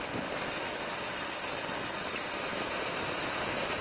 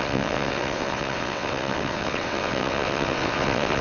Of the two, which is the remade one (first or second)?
second